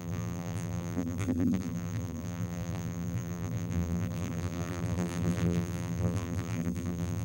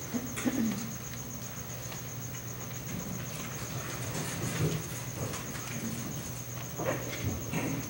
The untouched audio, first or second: second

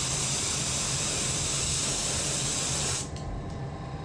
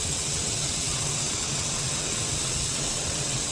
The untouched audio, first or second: first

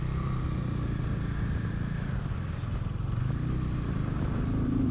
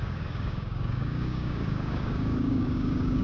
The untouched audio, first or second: first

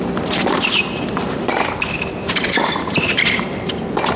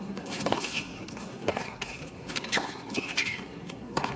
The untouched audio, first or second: first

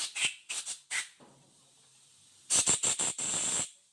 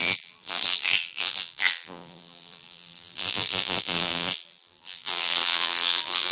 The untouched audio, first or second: first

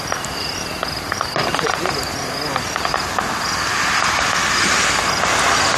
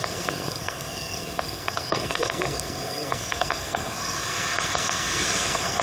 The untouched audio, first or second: first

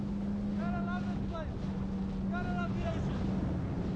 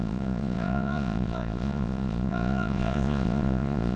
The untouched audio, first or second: first